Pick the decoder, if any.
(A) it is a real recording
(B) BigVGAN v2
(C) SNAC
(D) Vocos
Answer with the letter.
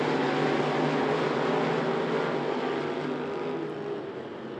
A